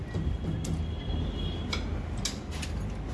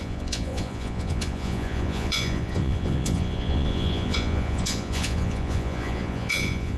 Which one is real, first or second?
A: first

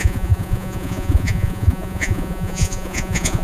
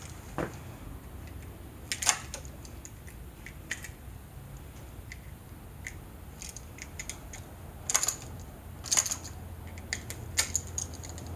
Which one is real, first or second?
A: second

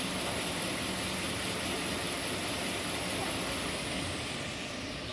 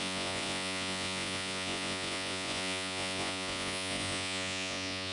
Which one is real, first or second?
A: first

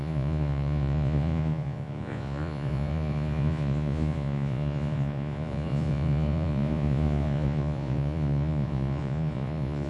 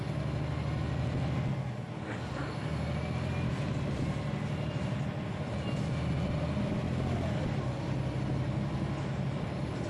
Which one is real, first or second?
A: second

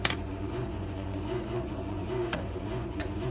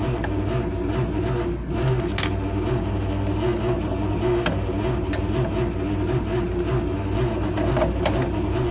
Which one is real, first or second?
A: second